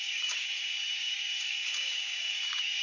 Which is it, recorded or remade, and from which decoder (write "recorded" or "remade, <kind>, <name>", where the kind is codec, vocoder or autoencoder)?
remade, codec, DAC